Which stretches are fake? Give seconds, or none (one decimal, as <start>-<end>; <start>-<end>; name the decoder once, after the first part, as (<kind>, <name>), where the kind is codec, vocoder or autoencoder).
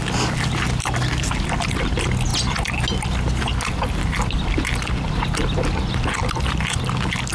none